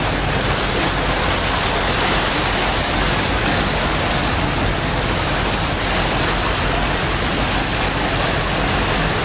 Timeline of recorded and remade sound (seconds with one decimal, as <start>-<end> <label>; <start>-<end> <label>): 0.0-2.8 recorded; 2.8-4.0 remade; 4.0-9.2 recorded